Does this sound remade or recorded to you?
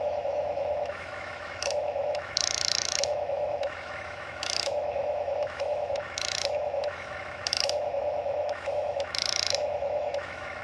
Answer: remade